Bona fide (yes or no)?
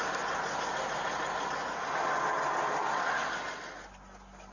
yes